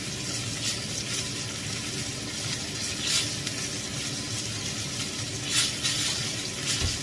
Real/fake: real